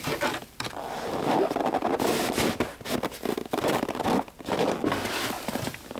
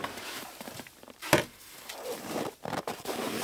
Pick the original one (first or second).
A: first